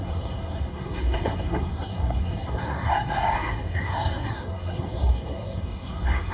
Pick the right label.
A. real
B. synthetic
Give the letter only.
B